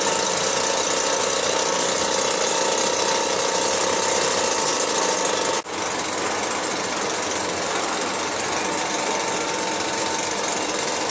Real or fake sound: real